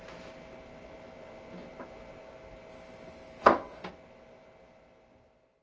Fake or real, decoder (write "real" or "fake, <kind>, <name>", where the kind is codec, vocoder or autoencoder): real